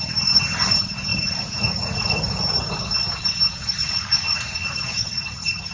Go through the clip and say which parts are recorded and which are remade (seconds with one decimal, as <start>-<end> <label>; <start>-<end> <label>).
0.0-1.1 recorded; 1.1-2.5 remade; 2.5-3.6 recorded; 3.6-5.7 remade